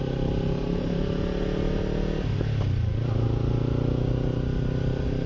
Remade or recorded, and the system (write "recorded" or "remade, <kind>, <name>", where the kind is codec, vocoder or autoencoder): recorded